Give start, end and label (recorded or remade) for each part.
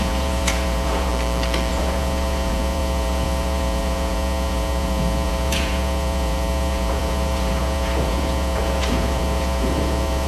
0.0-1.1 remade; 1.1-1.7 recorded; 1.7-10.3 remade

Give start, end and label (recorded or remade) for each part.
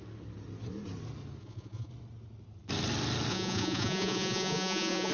0.0-1.4 recorded; 1.4-1.9 remade; 1.9-3.3 recorded; 3.3-5.1 remade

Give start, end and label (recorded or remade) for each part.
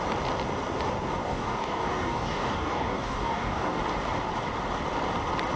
0.0-1.2 recorded; 1.2-3.8 remade; 3.8-5.6 recorded